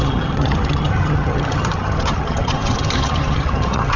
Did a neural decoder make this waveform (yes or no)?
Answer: yes